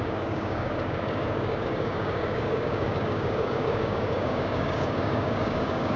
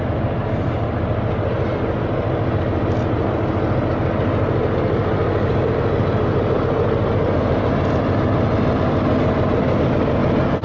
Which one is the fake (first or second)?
first